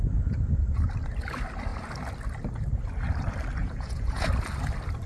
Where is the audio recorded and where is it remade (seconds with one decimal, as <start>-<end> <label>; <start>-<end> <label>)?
0.0-3.6 recorded; 3.6-4.3 remade; 4.3-5.1 recorded